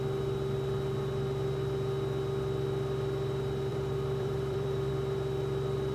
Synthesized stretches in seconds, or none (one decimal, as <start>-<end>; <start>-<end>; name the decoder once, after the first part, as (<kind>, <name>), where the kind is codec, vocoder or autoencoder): 3.7-4.9 (vocoder, BigVGAN v2)

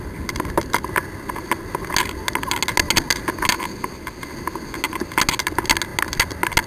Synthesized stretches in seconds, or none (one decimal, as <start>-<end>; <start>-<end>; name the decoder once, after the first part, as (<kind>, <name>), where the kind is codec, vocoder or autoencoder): none

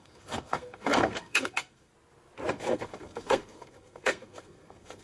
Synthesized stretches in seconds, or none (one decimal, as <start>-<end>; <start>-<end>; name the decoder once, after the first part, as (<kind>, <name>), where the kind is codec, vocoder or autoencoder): 0.0-1.9 (codec, SNAC); 2.5-5.0

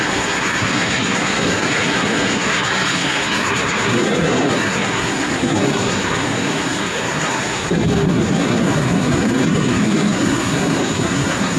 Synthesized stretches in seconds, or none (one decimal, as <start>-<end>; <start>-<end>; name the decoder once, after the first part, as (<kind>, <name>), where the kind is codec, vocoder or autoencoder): 0.0-11.6 (codec, SNAC)

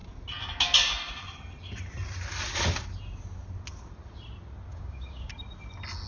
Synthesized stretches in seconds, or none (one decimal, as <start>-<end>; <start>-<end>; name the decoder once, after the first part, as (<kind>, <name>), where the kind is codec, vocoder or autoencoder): 4.7-5.3 (codec, DAC)

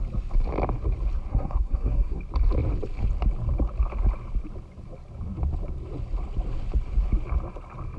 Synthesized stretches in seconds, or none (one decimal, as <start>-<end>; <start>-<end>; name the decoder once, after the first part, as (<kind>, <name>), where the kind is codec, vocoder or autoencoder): 1.3-2.2 (codec, SNAC)